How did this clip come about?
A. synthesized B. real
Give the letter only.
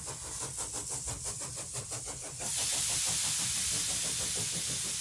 B